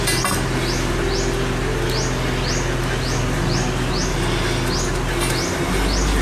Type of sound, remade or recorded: recorded